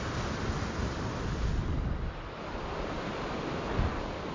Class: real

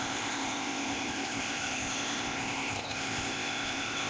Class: fake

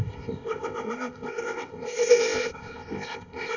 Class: fake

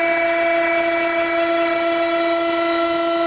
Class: real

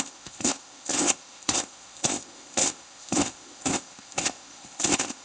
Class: fake